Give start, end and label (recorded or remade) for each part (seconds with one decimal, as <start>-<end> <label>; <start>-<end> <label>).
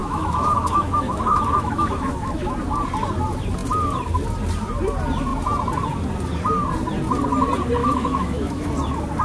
0.0-2.5 remade; 2.5-7.8 recorded; 7.8-8.7 remade; 8.7-9.2 recorded